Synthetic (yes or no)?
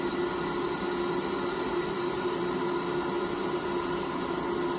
no